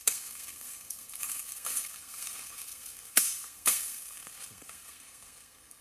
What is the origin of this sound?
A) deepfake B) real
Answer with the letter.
A